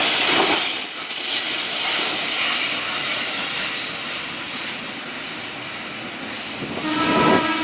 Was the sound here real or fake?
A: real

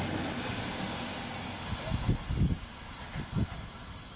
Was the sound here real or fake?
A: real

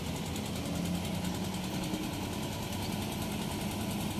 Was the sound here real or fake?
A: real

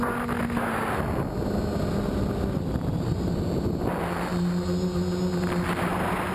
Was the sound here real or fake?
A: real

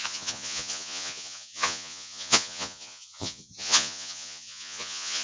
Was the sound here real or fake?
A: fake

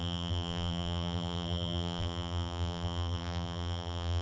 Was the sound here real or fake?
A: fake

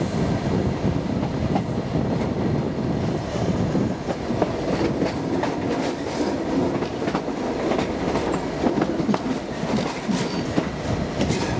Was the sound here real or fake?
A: real